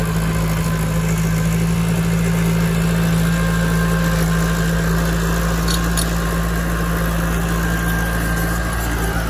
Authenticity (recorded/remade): recorded